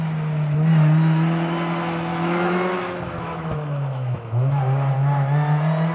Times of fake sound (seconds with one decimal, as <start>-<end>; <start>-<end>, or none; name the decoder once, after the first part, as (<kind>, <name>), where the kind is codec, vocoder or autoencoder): 2.1-4.6 (autoencoder, DAC-VAE)